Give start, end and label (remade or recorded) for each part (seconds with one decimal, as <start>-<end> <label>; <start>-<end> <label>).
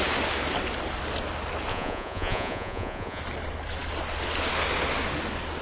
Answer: 0.0-1.7 recorded; 1.7-3.2 remade; 3.2-5.6 recorded